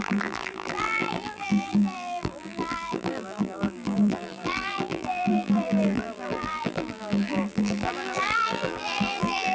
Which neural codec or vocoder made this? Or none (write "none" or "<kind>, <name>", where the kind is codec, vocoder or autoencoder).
vocoder, BigVGAN v2